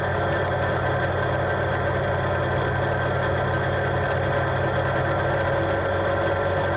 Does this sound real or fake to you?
real